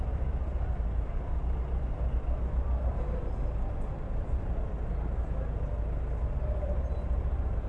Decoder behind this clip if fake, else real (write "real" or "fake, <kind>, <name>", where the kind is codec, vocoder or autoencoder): real